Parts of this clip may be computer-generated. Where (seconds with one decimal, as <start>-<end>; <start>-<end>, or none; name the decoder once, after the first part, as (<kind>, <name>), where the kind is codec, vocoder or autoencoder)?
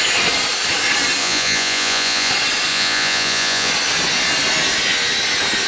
1.2-2.3 (vocoder, Vocos); 2.7-3.7